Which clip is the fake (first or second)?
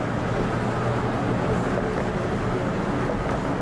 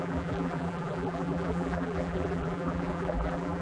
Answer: second